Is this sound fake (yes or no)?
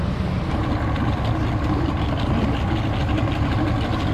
no